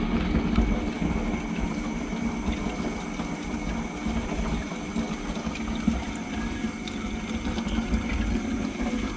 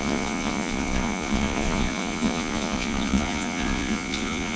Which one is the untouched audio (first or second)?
first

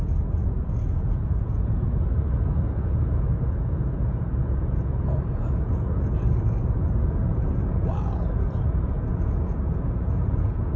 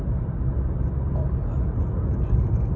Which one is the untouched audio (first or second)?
second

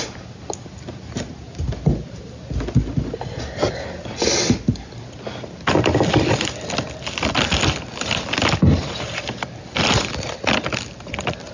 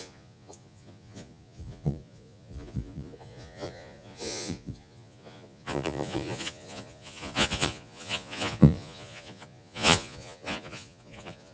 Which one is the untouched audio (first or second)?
first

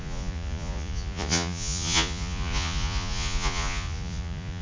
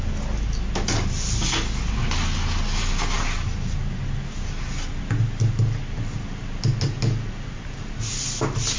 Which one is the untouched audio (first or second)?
second